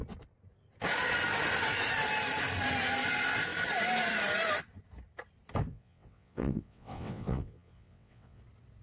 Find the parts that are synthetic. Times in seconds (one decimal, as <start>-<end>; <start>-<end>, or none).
5.7-8.4